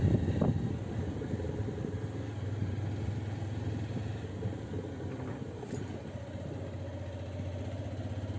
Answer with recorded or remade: recorded